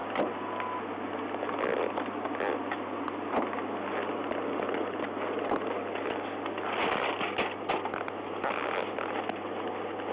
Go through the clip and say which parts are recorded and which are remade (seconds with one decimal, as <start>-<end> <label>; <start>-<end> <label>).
0.0-10.1 recorded